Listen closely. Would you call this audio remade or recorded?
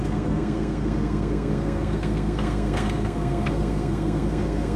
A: remade